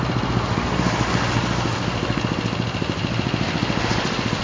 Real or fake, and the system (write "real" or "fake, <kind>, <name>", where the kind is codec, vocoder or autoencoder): real